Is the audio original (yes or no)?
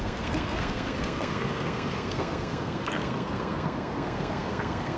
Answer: no